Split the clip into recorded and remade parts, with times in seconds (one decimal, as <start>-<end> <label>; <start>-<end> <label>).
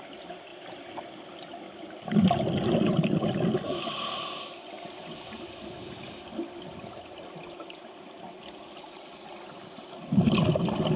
0.0-11.0 recorded